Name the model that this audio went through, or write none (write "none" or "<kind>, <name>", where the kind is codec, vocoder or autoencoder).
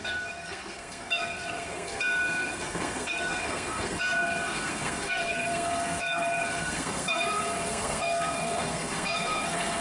codec, SNAC